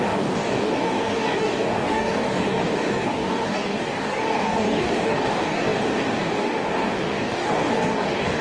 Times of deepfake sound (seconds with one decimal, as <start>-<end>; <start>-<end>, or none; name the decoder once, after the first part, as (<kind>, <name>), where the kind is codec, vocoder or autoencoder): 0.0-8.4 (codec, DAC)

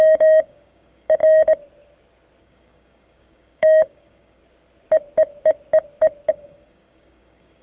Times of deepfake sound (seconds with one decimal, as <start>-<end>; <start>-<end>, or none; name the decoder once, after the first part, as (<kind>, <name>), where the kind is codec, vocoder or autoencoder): 0.0-1.2 (codec, DAC); 2.4-4.4; 6.3-7.6

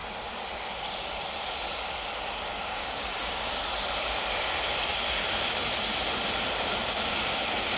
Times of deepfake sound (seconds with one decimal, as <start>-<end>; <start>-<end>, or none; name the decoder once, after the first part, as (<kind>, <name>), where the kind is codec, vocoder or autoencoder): 2.5-3.6 (codec, DAC)